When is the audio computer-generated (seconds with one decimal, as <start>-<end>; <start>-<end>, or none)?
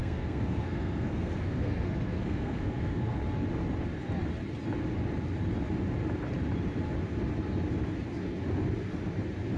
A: 0.0-3.2